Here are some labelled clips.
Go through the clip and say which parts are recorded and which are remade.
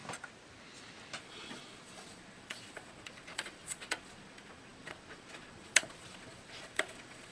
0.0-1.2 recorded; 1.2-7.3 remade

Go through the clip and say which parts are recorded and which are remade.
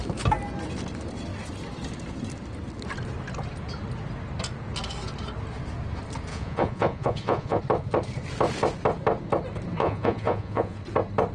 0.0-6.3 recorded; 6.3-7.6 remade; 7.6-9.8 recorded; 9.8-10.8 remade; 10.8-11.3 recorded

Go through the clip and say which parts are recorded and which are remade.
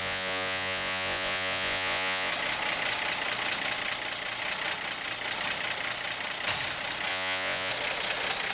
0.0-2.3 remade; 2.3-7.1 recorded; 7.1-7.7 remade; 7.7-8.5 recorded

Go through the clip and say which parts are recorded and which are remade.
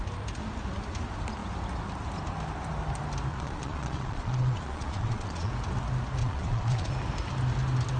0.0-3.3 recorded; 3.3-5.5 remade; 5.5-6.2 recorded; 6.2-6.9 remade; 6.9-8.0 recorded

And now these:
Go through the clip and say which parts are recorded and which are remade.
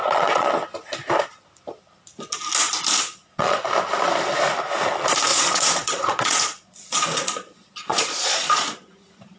0.0-0.5 remade; 0.5-3.1 recorded; 3.1-3.6 remade; 3.6-5.3 recorded; 5.3-9.4 remade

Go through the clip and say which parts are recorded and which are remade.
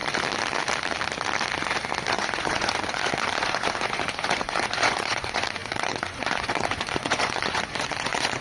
0.0-2.1 recorded; 2.1-8.4 remade